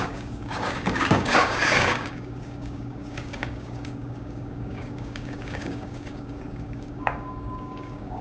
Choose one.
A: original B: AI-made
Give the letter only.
B